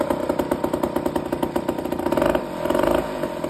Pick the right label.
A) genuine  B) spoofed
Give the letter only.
B